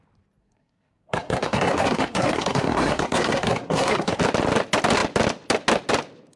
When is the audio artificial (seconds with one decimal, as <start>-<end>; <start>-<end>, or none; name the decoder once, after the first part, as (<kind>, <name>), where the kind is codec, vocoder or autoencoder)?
0.4-4.2 (codec, SNAC)